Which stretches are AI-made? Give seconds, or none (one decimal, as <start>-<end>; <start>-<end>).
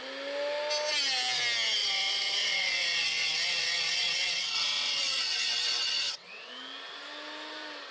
1.8-6.5